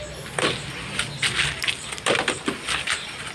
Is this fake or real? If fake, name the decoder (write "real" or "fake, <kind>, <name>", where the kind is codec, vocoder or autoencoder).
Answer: real